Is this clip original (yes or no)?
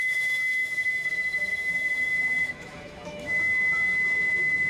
no